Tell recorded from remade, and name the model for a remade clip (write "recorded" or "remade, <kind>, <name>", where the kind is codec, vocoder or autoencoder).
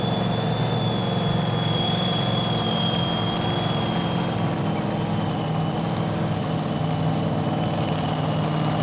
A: recorded